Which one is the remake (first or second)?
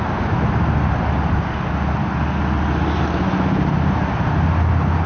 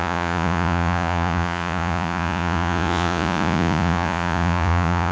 second